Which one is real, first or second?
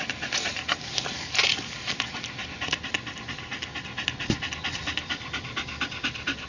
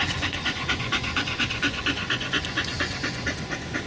first